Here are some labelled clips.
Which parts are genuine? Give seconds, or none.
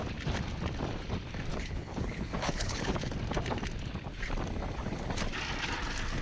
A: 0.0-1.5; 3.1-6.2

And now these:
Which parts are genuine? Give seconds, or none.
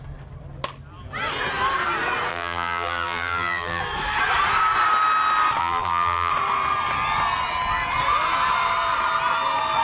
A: 0.0-2.3; 3.8-5.6; 6.3-9.8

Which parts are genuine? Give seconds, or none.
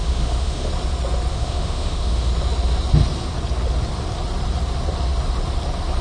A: 0.7-1.3; 2.3-6.0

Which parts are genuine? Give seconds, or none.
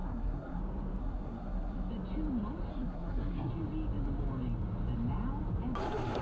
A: 0.6-1.0; 1.9-2.7; 3.5-6.2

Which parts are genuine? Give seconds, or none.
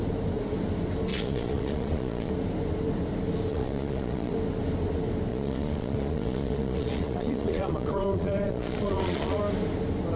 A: 0.0-1.1; 2.3-3.5; 4.3-5.3; 9.4-10.2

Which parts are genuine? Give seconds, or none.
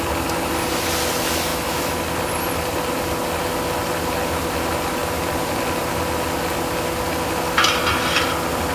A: 0.0-1.5; 2.0-8.7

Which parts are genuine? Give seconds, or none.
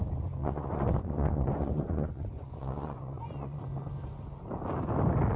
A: 0.0-0.4; 3.6-5.4